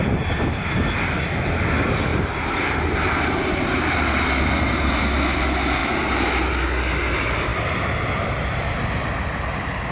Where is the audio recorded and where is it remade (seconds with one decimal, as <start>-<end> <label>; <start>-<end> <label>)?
0.0-1.2 remade; 1.2-2.1 recorded; 2.1-5.0 remade; 5.0-5.8 recorded; 5.8-6.5 remade; 6.5-9.9 recorded